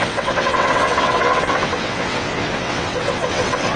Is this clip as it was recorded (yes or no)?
no